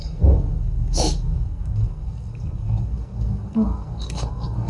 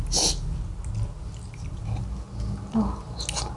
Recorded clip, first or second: second